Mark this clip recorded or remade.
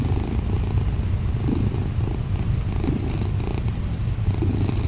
recorded